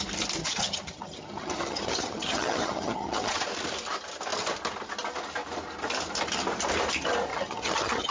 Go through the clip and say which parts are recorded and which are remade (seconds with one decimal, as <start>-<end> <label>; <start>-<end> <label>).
0.0-0.4 recorded; 0.4-3.4 remade; 3.4-7.3 recorded; 7.3-8.1 remade